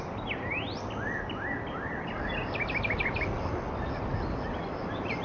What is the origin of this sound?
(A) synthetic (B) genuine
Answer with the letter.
B